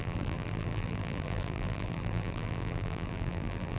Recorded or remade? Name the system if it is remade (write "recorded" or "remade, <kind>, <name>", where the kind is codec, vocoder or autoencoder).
remade, vocoder, BigVGAN v2